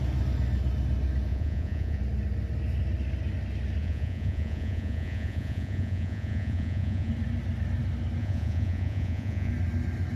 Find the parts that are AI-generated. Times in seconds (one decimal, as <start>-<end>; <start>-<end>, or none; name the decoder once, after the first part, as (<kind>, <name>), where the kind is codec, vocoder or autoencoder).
1.3-2.0 (vocoder, Vocos); 3.8-7.1; 8.2-9.5